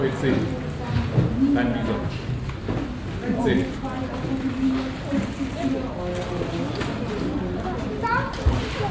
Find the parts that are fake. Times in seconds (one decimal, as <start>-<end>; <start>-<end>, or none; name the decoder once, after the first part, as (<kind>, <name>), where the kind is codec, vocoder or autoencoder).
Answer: none